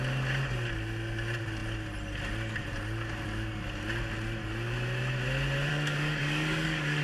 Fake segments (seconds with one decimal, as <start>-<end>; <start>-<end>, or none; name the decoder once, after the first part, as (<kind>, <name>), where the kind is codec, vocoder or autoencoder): 5.7-7.0 (codec, DAC)